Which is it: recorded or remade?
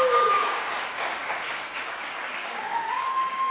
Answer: remade